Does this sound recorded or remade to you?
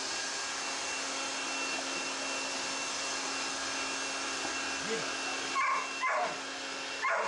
recorded